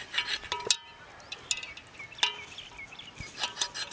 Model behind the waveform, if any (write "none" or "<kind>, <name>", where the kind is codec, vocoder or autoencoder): none